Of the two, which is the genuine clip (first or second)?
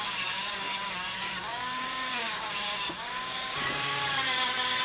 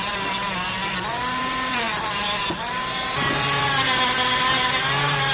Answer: second